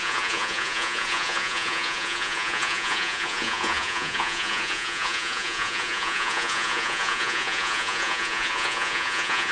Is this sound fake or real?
fake